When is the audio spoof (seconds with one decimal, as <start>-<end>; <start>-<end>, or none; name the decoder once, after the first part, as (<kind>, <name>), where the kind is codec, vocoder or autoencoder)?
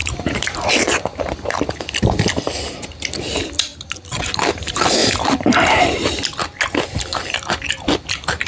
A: 0.0-1.8 (vocoder, BigVGAN v2); 5.0-6.2